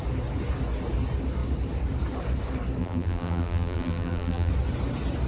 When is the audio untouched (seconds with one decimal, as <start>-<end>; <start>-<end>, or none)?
0.0-2.8; 4.5-5.3